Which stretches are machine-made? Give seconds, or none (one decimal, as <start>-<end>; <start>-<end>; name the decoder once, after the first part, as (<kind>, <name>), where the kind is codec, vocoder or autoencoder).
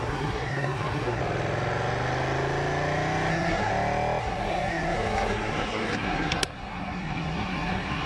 0.0-1.2 (codec, SNAC); 3.3-3.7; 4.2-8.1